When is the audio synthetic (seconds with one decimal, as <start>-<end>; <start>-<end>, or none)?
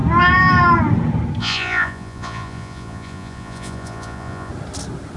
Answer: 1.4-4.5